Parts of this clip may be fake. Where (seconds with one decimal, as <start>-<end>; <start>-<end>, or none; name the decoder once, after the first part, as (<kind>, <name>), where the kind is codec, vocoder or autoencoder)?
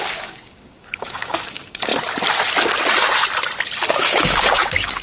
0.0-1.9 (codec, DAC); 3.9-5.0